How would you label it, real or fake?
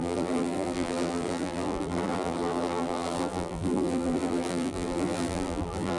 fake